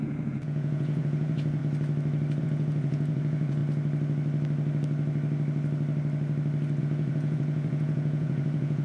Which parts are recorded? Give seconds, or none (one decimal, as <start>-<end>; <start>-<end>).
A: 1.6-2.4; 3.6-6.8